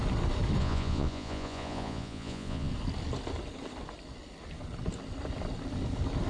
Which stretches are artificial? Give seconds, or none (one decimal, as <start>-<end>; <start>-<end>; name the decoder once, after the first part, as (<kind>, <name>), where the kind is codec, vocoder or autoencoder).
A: 0.6-2.7 (vocoder, Vocos)